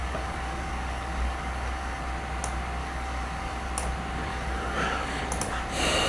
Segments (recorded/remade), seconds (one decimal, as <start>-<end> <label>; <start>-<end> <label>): 0.0-2.0 remade; 2.0-2.8 recorded; 2.8-3.7 remade; 3.7-4.3 recorded; 4.3-5.2 remade; 5.2-6.1 recorded